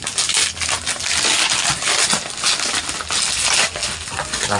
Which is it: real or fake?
real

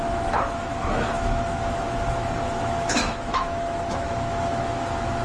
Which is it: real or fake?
fake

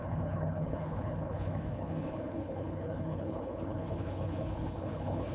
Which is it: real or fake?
fake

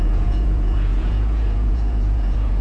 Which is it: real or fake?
fake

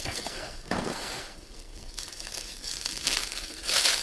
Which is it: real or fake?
fake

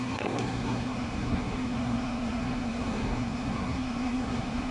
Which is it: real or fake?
fake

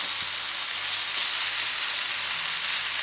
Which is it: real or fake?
real